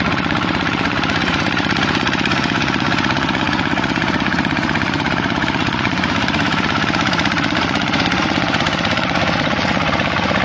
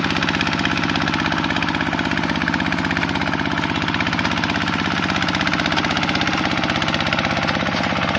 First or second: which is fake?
first